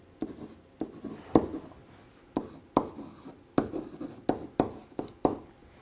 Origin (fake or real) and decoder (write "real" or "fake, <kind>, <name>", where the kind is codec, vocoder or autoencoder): real